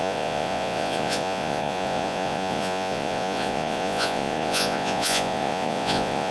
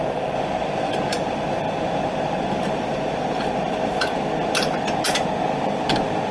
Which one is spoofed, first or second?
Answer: first